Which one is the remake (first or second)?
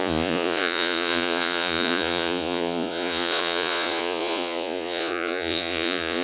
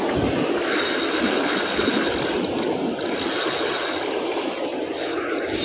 first